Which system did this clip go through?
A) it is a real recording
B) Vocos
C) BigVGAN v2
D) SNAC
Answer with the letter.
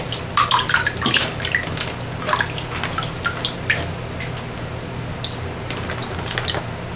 A